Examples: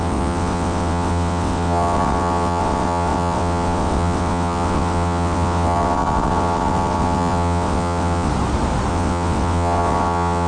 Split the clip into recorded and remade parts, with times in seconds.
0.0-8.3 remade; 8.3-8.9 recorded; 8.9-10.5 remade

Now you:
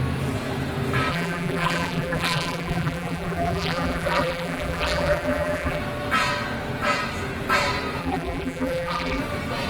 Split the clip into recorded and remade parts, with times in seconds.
0.0-1.1 recorded; 1.1-5.8 remade; 5.8-8.0 recorded; 8.0-9.2 remade; 9.2-9.7 recorded

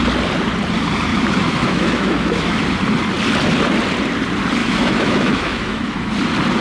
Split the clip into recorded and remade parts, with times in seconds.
0.0-1.1 recorded; 1.1-2.6 remade; 2.6-4.6 recorded; 4.6-6.1 remade; 6.1-6.6 recorded

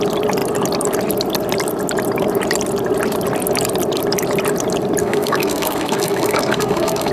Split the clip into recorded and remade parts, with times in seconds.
0.0-5.0 recorded; 5.0-7.1 remade